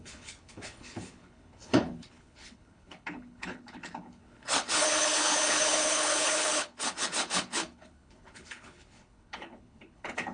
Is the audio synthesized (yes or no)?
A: yes